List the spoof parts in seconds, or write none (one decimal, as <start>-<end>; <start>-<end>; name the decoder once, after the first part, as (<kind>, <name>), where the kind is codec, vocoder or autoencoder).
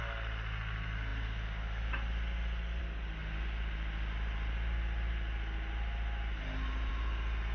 none